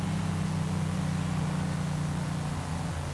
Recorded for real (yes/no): yes